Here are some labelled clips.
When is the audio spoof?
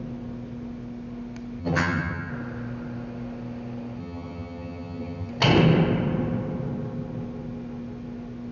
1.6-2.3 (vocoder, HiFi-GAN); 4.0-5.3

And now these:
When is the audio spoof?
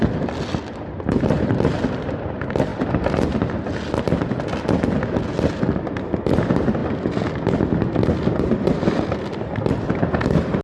none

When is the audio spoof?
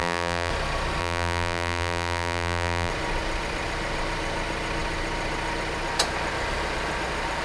0.0-0.5 (vocoder, BigVGAN v2); 1.0-2.9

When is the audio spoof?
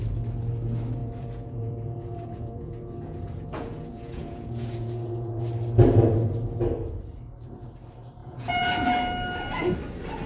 1.0-5.4 (vocoder, Vocos); 8.2-8.9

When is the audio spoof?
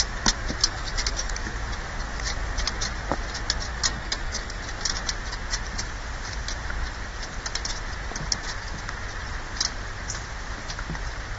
0.6-1.3 (codec, DAC); 3.7-4.6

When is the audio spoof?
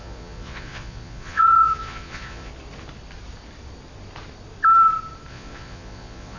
0.0-2.5 (vocoder, Vocos); 5.3-6.4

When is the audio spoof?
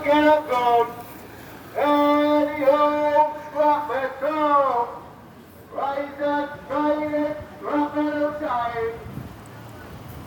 4.8-9.1 (vocoder, BigVGAN v2)